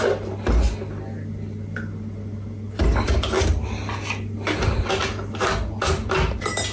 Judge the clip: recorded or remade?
recorded